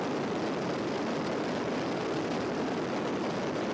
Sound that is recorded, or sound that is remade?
recorded